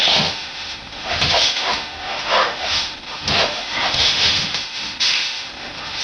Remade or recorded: remade